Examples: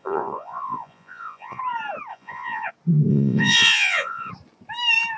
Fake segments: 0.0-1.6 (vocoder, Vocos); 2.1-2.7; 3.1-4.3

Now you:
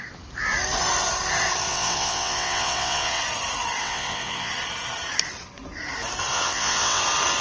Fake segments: 1.7-3.2 (vocoder, WaveNeXt); 3.8-4.5; 6.3-7.0